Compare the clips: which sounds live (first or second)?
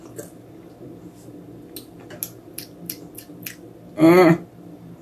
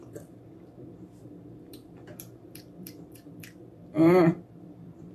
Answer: first